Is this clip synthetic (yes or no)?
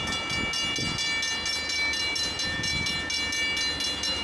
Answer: no